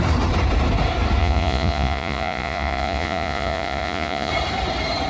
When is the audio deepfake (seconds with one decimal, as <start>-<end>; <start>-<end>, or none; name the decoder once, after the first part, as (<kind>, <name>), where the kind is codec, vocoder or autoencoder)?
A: 1.2-4.3 (vocoder, Vocos)